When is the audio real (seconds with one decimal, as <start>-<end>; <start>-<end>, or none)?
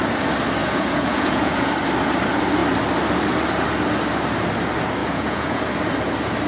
0.0-0.6; 1.7-5.0; 5.6-6.5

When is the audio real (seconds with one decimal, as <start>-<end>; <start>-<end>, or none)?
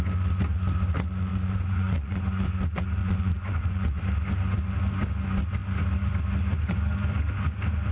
0.0-1.3; 2.2-3.0; 4.0-7.9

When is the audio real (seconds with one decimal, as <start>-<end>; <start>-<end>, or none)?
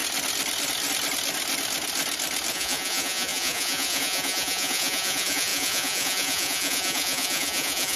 0.0-2.5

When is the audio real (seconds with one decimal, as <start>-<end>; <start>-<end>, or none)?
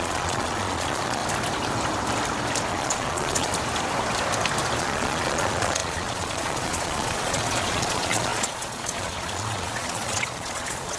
1.2-2.7; 3.5-4.8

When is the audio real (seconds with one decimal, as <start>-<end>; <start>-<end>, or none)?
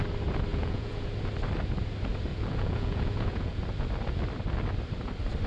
0.0-0.5; 1.0-2.3; 3.6-5.5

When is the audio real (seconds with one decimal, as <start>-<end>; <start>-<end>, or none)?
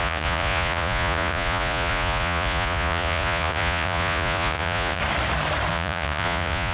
5.0-5.7